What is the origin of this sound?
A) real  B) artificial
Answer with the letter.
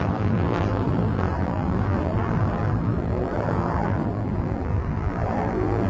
B